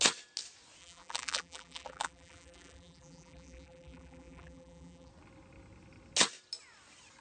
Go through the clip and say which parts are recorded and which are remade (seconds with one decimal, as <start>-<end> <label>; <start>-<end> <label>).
0.0-0.8 recorded; 0.8-5.1 remade; 5.1-7.2 recorded